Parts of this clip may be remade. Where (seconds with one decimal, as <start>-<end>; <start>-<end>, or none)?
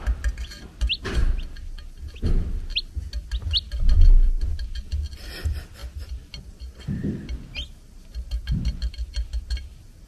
none